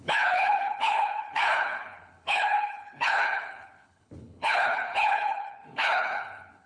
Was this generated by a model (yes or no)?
yes